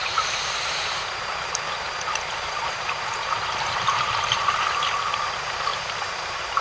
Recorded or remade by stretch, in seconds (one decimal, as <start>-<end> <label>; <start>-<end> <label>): 0.0-6.6 remade